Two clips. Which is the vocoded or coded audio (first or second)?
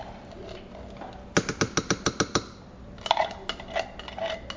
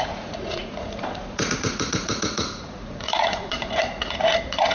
second